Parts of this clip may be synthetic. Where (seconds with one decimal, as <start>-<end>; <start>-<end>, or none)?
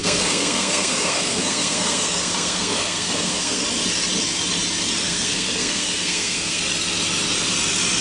0.0-3.6; 5.0-6.6